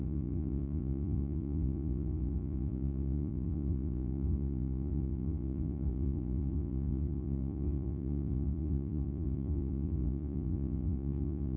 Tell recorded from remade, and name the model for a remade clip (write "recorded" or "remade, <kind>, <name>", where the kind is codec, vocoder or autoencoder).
remade, vocoder, Vocos